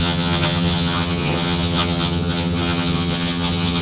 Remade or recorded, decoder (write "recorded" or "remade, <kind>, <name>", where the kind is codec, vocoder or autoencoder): remade, vocoder, HiFi-GAN